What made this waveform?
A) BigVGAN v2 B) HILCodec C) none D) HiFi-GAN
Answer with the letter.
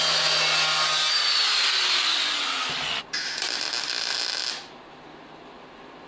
C